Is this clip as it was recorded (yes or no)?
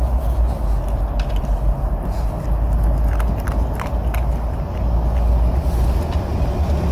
yes